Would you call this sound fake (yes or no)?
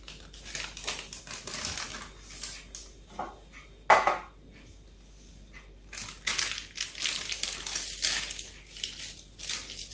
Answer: no